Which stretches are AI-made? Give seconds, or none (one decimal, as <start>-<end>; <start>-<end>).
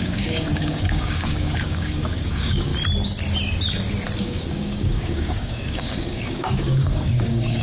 0.0-2.7; 4.2-7.6